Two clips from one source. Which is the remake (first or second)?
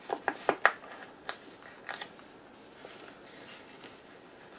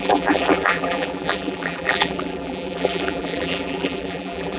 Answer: second